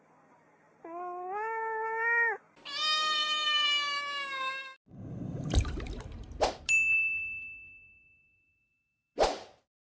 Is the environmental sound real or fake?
real